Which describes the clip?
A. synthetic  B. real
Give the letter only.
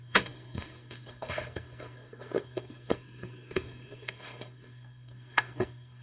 A